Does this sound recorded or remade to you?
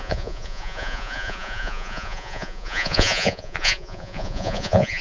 remade